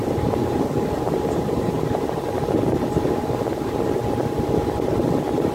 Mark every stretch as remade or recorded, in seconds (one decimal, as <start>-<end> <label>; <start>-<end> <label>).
0.0-3.3 remade; 3.3-5.5 recorded